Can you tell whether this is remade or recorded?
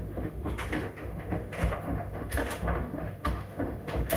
remade